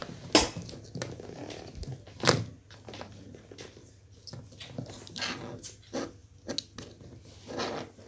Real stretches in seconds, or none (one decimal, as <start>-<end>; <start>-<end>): 0.0-8.1